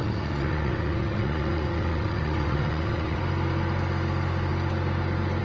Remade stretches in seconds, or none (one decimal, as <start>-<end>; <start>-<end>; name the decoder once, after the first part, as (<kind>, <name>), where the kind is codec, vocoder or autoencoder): 0.0-3.2 (vocoder, WaveNeXt)